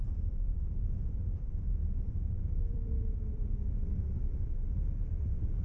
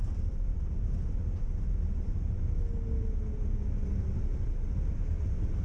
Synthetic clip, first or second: first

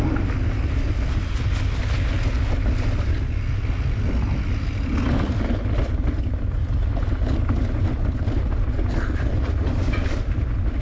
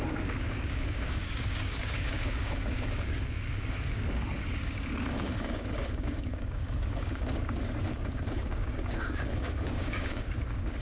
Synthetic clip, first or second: second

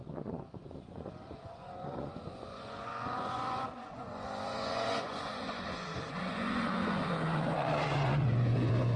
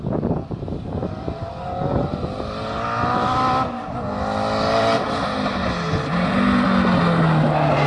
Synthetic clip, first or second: first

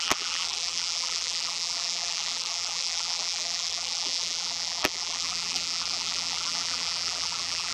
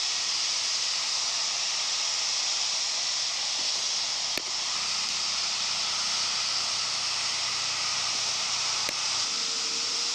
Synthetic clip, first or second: first